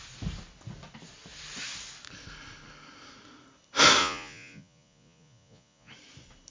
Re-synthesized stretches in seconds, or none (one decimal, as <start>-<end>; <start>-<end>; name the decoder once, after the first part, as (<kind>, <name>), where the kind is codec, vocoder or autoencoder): 4.0-5.9 (vocoder, Vocos)